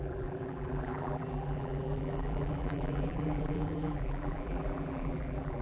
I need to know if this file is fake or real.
fake